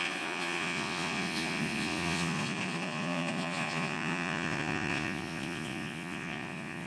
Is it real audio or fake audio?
fake